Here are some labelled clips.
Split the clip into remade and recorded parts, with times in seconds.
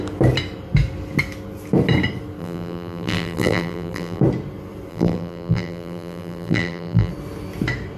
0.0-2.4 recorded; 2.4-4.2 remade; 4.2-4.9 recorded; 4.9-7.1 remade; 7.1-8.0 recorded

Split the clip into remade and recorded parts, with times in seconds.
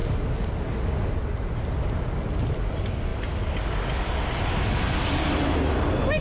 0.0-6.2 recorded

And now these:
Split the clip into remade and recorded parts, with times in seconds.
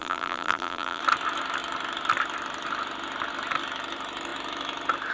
0.0-1.0 remade; 1.0-5.1 recorded